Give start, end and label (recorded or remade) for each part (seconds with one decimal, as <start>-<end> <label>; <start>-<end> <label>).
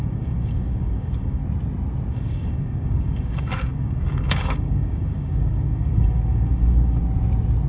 0.0-1.4 remade; 1.4-2.1 recorded; 2.1-7.0 remade; 7.0-7.7 recorded